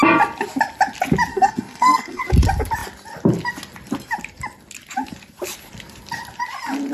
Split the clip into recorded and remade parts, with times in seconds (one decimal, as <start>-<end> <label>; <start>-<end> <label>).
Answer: 0.0-1.3 recorded; 1.3-2.2 remade; 2.2-6.9 recorded